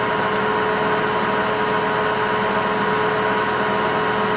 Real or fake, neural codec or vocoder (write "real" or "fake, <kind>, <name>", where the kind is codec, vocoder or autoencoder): real